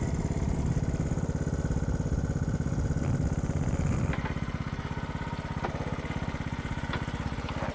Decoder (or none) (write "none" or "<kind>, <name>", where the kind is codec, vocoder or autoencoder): none